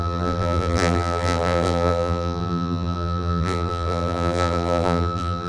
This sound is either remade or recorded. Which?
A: remade